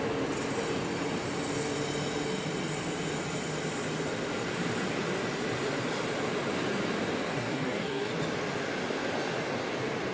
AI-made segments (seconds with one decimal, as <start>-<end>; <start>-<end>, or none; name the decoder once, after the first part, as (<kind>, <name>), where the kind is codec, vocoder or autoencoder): 7.3-8.1 (codec, SNAC)